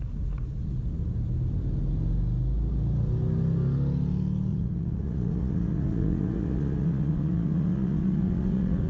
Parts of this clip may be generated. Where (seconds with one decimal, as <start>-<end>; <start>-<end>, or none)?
4.5-8.9